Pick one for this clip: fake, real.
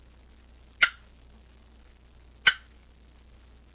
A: real